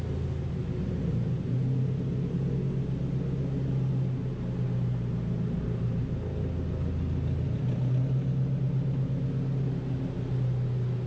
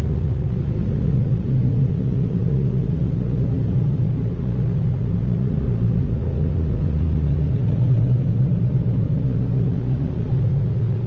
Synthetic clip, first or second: second